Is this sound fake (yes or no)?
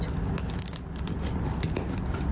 no